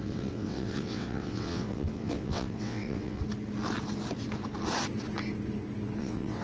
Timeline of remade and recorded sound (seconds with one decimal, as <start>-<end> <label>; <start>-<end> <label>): 0.0-3.2 remade; 3.2-6.0 recorded; 6.0-6.4 remade